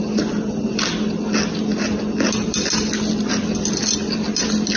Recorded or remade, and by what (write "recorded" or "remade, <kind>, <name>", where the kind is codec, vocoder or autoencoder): recorded